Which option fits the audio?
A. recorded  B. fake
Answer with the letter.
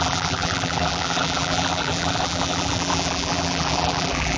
B